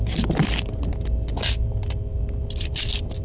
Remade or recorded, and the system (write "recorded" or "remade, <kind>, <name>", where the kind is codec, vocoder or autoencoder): recorded